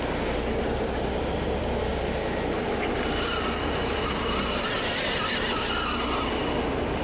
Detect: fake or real real